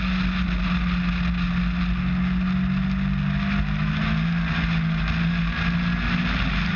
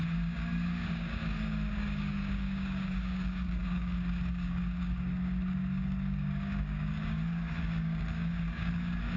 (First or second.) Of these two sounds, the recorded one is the first